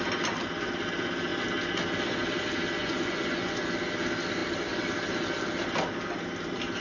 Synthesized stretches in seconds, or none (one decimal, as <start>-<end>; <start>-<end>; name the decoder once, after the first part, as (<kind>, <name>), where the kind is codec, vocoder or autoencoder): 2.8-3.6 (vocoder, Vocos)